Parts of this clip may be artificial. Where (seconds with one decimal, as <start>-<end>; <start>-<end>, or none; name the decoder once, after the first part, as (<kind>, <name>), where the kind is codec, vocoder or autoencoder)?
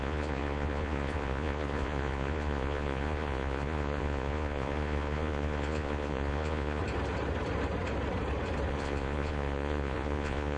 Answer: 0.0-6.8 (vocoder, Vocos); 8.7-10.6